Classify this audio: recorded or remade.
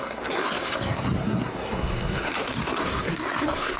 remade